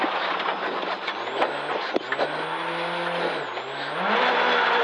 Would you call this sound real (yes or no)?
yes